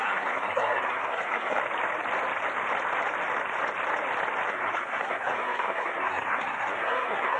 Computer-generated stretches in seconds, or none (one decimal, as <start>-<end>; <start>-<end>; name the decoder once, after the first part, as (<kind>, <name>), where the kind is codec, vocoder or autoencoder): 0.0-1.6 (codec, SNAC); 4.5-7.4